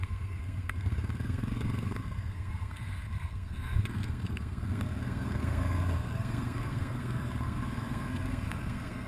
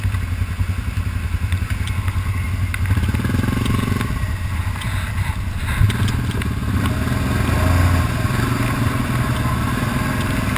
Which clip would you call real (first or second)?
second